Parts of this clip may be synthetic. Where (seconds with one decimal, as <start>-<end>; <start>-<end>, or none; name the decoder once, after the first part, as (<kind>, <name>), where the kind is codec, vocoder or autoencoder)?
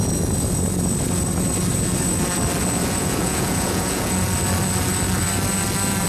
2.8-4.1 (vocoder, Vocos)